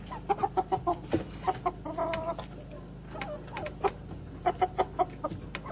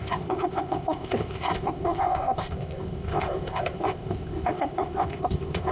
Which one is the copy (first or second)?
second